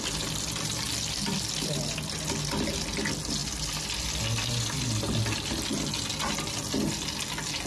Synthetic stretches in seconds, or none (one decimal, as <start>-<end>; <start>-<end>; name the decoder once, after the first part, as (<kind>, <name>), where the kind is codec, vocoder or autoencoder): none

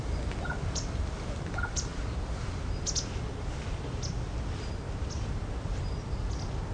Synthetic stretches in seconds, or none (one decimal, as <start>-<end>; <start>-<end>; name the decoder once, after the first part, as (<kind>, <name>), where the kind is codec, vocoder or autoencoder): 0.0-6.7 (vocoder, BigVGAN v2)

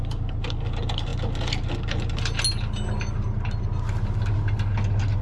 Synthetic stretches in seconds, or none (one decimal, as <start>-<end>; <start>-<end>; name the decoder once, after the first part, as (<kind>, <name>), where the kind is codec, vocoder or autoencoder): none

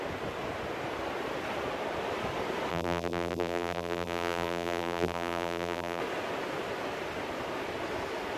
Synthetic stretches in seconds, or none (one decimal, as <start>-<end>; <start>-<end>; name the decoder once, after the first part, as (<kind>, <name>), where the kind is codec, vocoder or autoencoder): 2.7-6.0 (vocoder, BigVGAN v2)